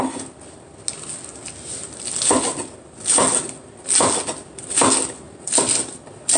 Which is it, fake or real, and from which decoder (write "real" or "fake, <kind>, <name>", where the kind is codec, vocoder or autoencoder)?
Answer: real